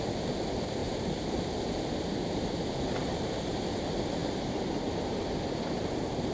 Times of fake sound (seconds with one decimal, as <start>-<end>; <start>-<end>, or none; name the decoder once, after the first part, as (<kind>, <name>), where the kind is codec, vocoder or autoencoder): none